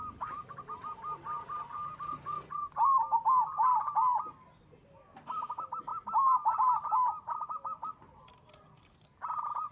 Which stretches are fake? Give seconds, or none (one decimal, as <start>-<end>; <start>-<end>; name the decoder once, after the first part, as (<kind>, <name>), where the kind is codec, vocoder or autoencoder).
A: none